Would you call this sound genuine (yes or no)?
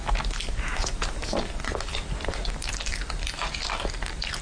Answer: yes